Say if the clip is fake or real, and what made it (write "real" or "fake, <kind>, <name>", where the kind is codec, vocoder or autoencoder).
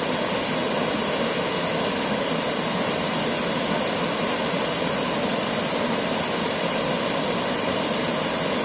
real